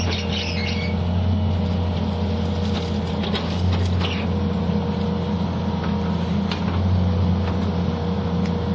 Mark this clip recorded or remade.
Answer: recorded